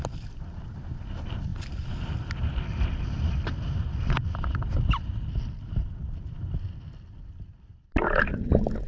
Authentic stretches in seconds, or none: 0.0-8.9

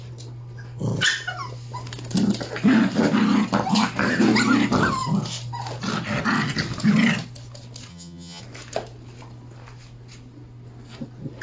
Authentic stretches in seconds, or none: 0.0-7.9; 8.4-11.4

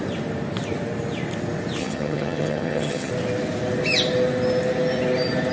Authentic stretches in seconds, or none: 0.0-1.8; 3.1-5.5

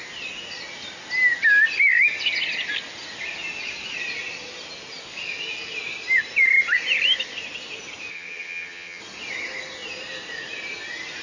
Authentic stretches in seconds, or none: 0.0-8.1; 9.0-11.2

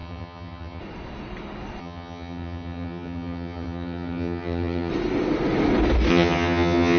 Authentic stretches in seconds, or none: 0.8-1.8; 4.9-6.1

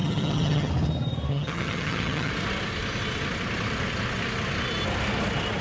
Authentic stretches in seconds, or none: 0.7-1.3; 2.3-5.6

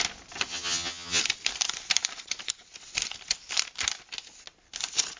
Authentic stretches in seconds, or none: 0.0-0.5; 1.2-5.2

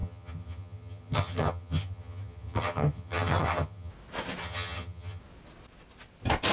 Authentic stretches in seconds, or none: 3.9-4.4; 5.2-6.5